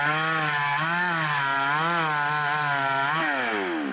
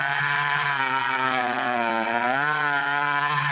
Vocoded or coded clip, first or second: second